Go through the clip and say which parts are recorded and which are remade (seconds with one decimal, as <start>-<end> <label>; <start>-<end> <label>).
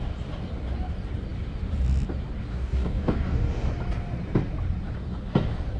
0.0-2.5 recorded; 2.5-3.7 remade; 3.7-5.8 recorded